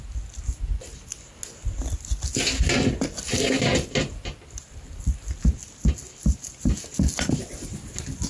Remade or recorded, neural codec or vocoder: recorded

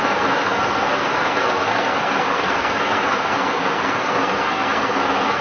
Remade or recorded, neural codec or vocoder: remade, codec, SNAC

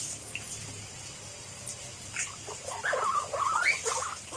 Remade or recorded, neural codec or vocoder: recorded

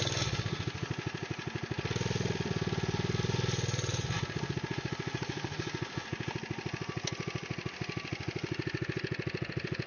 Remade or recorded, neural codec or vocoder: recorded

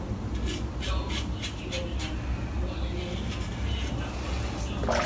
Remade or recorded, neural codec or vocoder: recorded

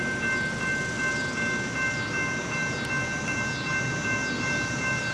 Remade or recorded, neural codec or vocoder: recorded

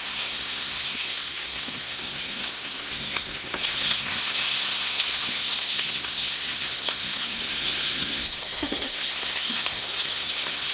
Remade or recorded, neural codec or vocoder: remade, codec, SNAC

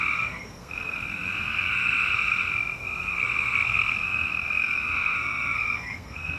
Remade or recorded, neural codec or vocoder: remade, codec, SNAC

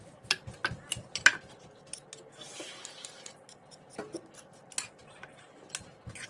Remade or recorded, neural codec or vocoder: recorded